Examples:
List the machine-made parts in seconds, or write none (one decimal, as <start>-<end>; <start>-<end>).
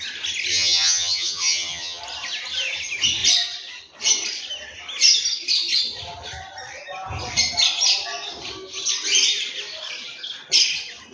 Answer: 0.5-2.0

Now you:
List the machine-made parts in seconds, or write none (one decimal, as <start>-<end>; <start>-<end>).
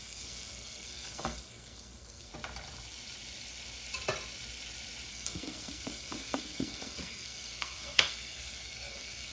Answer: 0.0-2.3; 5.1-9.3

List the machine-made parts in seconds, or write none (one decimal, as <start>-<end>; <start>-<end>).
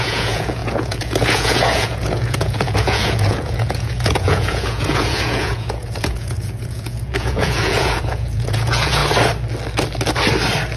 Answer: 0.0-9.0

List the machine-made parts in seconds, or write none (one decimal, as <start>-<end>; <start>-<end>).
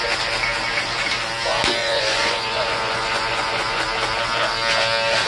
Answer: 1.8-3.8